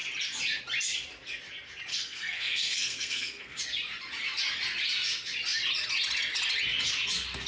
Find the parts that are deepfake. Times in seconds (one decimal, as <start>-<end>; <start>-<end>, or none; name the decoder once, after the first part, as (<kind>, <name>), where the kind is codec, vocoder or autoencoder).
1.9-3.6 (codec, SNAC)